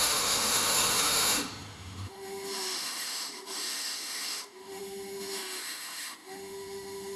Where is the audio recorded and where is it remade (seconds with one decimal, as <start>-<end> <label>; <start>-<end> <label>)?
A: 0.0-7.2 remade